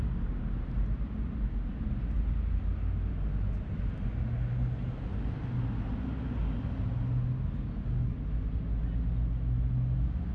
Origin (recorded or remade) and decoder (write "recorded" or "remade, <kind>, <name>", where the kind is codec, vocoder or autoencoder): recorded